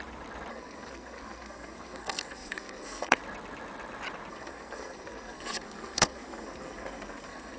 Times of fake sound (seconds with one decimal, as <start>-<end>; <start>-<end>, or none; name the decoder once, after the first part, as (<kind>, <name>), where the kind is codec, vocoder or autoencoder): 0.5-3.2 (codec, SNAC); 4.3-7.6